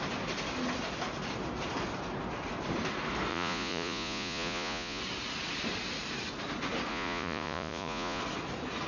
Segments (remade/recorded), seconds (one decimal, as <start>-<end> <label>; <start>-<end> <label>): 0.0-3.3 recorded; 3.3-5.0 remade; 5.0-6.9 recorded; 6.9-8.2 remade; 8.2-8.9 recorded